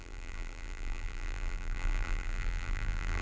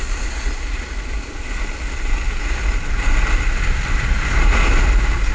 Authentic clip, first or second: second